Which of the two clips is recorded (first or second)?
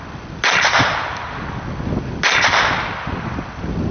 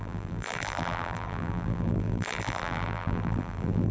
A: first